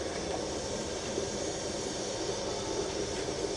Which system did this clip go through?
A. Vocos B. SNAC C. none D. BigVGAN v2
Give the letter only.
C